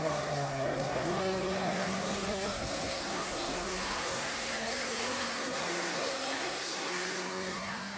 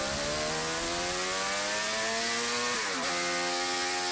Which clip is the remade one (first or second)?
first